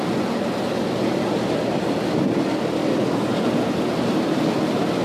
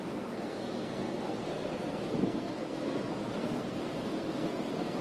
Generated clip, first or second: second